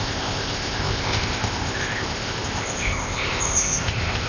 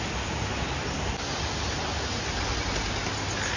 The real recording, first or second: second